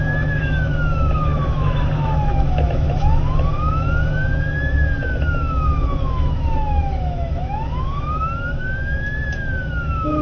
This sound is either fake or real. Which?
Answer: fake